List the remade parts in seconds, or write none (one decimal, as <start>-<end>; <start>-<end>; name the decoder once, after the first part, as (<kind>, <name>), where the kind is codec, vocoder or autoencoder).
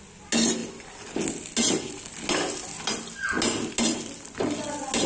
none